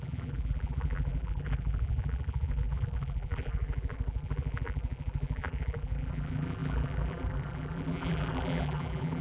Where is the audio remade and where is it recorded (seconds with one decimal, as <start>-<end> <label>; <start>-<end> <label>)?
0.0-9.2 remade